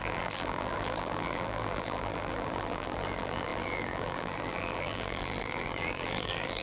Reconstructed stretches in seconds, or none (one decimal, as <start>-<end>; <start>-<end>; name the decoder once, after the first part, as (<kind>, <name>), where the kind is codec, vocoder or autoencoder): 0.0-6.6 (vocoder, BigVGAN v2)